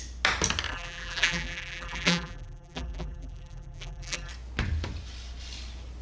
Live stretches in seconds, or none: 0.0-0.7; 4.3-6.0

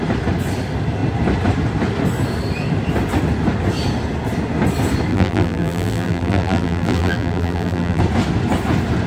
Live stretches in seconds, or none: 0.0-5.1; 8.0-9.1